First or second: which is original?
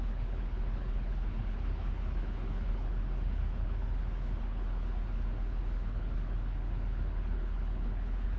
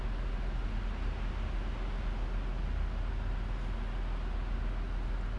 second